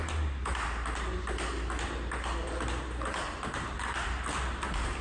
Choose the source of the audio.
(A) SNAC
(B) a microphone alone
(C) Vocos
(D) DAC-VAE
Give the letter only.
B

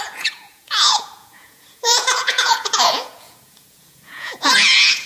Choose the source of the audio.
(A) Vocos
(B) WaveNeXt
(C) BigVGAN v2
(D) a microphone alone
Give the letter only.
A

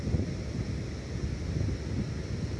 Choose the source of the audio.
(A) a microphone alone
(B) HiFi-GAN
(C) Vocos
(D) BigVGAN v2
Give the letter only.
A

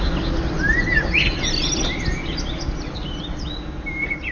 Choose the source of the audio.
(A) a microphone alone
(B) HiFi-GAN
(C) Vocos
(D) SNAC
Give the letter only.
A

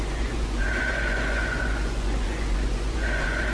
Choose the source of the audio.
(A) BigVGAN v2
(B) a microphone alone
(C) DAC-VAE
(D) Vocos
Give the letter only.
D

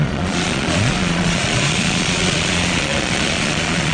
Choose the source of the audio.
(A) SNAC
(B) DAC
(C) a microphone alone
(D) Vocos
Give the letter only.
D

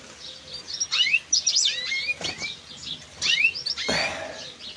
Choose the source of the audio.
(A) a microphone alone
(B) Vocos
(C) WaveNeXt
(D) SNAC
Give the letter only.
A